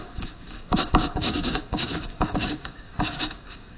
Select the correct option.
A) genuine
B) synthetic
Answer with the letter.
B